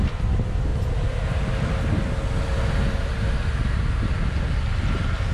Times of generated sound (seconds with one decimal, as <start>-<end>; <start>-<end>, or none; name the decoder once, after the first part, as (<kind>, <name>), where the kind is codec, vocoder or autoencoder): none